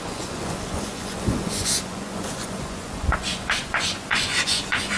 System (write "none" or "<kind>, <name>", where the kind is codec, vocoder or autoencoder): vocoder, Vocos